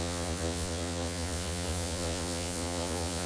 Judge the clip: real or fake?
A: fake